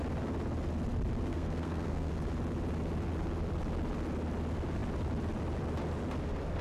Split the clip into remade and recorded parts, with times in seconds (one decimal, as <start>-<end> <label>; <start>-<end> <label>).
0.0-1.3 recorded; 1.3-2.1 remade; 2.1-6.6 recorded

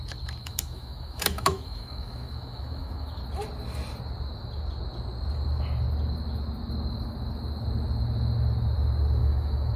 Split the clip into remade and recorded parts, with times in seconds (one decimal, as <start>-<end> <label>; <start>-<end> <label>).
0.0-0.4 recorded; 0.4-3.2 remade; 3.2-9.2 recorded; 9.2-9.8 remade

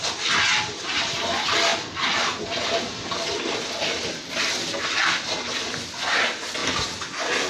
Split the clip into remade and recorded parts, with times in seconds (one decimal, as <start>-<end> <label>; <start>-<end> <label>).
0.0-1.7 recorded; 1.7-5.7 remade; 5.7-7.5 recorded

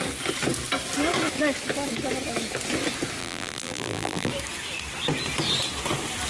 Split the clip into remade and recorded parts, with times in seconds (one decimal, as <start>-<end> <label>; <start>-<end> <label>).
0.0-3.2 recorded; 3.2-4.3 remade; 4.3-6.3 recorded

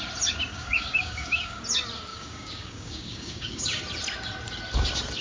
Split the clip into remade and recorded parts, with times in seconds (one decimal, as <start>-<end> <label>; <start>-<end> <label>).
0.0-0.5 recorded; 0.5-1.6 remade; 1.6-2.1 recorded; 2.1-3.8 remade; 3.8-5.2 recorded

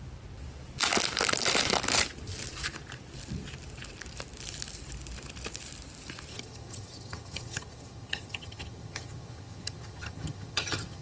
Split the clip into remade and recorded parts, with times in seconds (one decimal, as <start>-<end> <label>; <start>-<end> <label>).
0.0-6.3 recorded; 6.3-11.0 remade

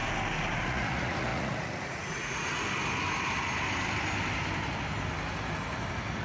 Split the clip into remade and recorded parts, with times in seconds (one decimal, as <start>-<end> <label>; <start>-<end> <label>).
0.0-0.6 recorded; 0.6-2.5 remade; 2.5-6.2 recorded

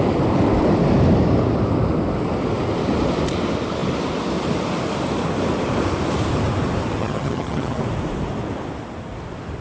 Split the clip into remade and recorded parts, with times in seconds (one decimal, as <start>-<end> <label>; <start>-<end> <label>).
0.0-7.0 recorded; 7.0-7.8 remade; 7.8-9.6 recorded